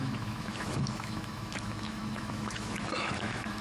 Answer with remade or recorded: remade